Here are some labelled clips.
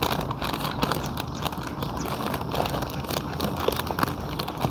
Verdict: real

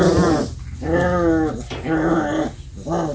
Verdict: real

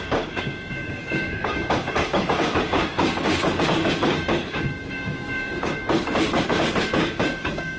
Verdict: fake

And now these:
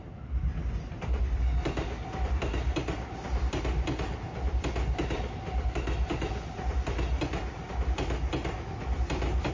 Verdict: real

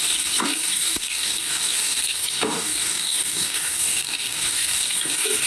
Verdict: fake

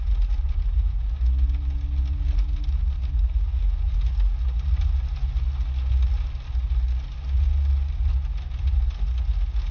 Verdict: real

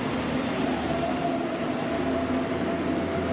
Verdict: real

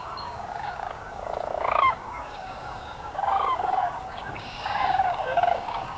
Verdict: fake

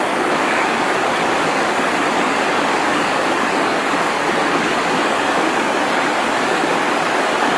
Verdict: fake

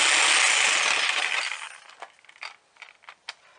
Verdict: real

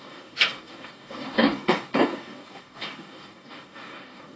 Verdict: fake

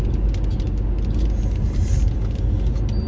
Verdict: real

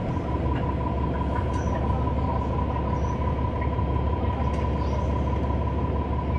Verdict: real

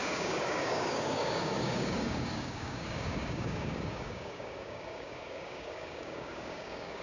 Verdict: fake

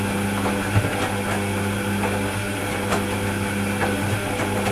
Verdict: real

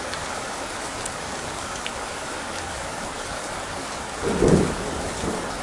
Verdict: fake